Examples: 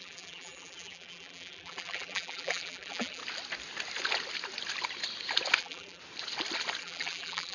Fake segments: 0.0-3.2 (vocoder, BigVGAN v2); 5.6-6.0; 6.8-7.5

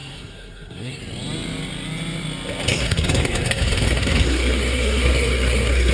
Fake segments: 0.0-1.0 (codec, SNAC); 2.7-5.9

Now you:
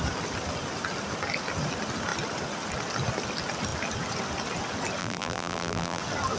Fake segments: 5.0-6.0 (vocoder, BigVGAN v2)

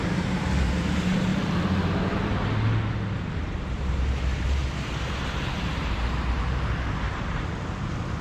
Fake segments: 0.0-1.3 (vocoder, BigVGAN v2); 3.4-8.2

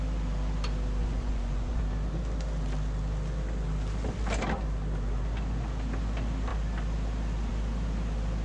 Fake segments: 1.0-1.8 (vocoder, Vocos)